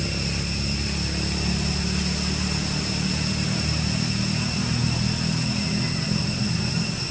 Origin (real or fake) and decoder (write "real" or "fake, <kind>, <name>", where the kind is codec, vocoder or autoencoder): real